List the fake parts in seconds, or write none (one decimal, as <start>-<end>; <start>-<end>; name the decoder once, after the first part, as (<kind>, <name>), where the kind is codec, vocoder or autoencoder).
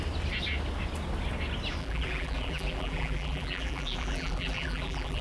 1.8-5.2 (vocoder, BigVGAN v2)